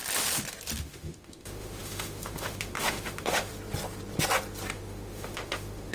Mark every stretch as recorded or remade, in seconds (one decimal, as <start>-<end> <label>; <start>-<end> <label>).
0.0-0.8 recorded; 0.8-3.5 remade; 3.5-4.7 recorded; 4.7-5.9 remade